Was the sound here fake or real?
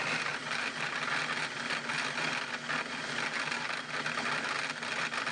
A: real